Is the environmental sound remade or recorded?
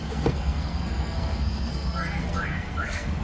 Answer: remade